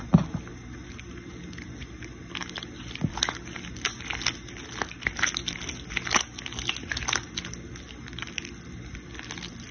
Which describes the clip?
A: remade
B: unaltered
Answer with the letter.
B